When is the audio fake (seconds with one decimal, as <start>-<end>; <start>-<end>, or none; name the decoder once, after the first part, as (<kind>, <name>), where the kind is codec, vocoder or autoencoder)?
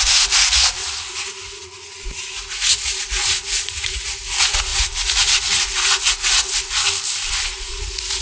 0.0-6.8 (vocoder, Vocos); 7.3-8.2